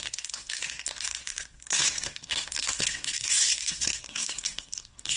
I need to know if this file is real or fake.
fake